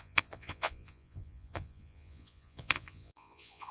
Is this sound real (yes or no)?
no